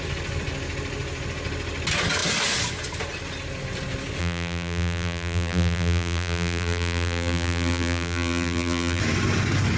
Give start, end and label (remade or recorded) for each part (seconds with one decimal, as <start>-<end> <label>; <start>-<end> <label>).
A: 0.0-4.2 recorded; 4.2-9.0 remade; 9.0-9.8 recorded